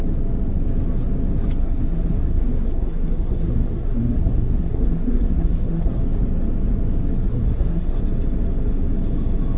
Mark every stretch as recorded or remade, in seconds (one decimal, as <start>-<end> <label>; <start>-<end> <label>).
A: 0.0-1.6 recorded; 1.6-6.0 remade; 6.0-7.3 recorded; 7.3-8.0 remade; 8.0-9.6 recorded

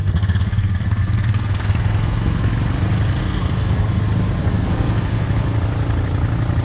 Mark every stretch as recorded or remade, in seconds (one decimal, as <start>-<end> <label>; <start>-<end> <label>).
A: 0.0-2.5 remade; 2.5-3.2 recorded; 3.2-4.0 remade; 4.0-4.4 recorded; 4.4-5.3 remade; 5.3-6.6 recorded